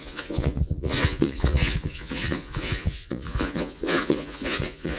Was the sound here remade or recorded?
remade